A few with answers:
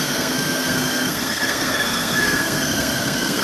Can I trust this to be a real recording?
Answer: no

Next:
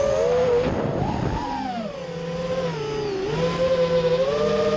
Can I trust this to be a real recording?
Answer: yes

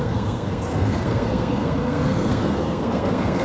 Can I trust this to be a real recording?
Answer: no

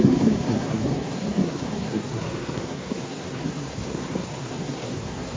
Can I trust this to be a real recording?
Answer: no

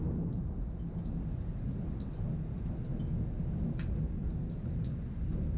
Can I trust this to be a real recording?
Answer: yes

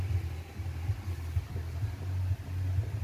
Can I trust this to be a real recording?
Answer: yes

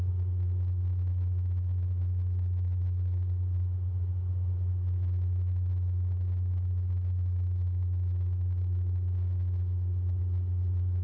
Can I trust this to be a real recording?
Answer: yes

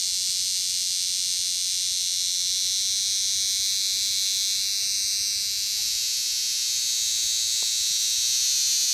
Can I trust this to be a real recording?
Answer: yes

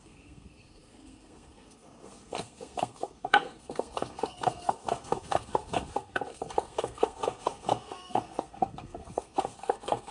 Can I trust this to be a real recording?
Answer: no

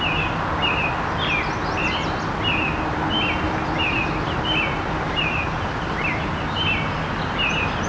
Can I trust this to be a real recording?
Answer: yes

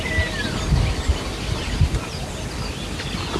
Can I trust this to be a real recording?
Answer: yes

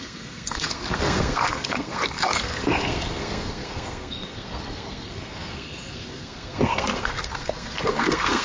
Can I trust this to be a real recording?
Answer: no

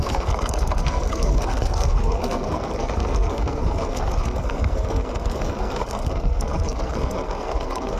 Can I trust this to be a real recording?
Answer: no